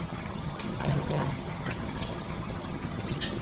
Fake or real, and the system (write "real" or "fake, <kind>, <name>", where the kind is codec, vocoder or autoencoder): fake, vocoder, HiFi-GAN